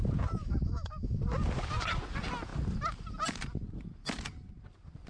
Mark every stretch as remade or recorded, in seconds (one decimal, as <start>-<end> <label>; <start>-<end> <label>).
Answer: 0.0-0.4 recorded; 0.4-1.2 remade; 1.2-5.1 recorded